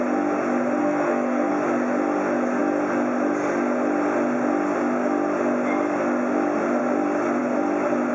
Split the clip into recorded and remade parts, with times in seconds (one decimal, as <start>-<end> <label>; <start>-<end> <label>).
0.0-0.8 recorded; 0.8-1.5 remade; 1.5-8.1 recorded